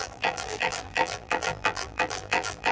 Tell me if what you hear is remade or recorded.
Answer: remade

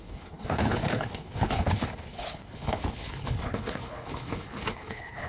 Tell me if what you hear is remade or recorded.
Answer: remade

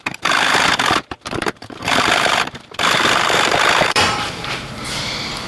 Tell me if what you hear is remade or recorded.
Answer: remade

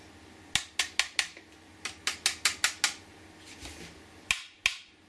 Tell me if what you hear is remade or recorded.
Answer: recorded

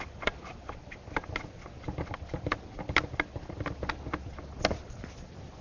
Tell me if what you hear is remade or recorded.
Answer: recorded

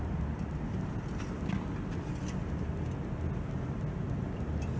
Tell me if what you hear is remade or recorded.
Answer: recorded